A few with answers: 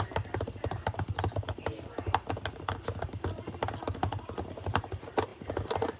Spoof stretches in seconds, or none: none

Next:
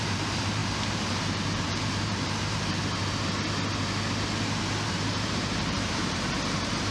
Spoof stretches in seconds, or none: 0.0-3.0; 4.9-6.9

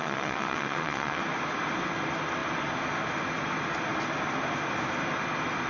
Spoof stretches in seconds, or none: 0.0-1.2

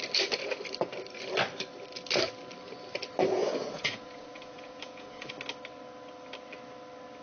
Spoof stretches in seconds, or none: 3.4-5.3

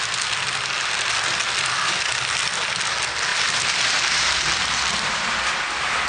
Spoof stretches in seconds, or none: 3.3-5.4